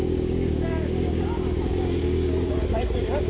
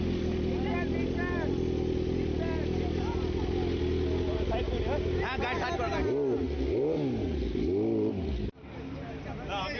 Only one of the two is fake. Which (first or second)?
first